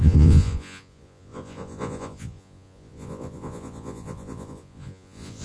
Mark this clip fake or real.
fake